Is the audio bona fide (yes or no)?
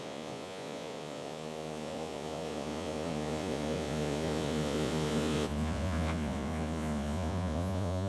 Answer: no